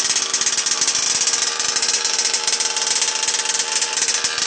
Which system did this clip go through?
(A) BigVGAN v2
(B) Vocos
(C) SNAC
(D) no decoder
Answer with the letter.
D